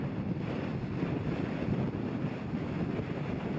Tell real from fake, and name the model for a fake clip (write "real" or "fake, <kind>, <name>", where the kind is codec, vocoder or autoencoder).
real